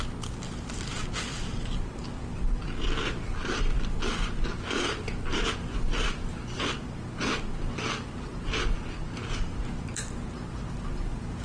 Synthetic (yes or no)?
no